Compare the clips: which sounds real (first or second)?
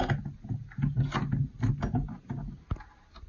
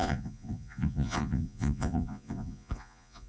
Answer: first